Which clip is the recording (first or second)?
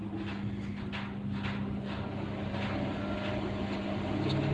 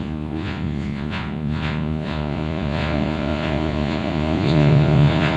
first